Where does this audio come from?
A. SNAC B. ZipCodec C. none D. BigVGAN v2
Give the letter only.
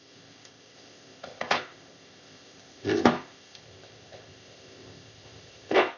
B